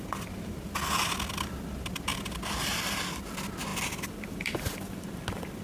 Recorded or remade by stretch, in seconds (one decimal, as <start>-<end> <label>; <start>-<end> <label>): 0.0-3.7 recorded; 3.7-5.6 remade